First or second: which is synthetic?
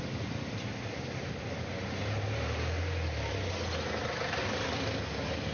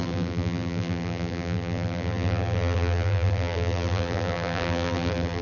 second